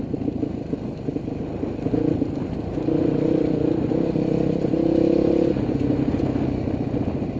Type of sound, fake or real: real